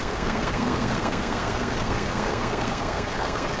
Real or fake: fake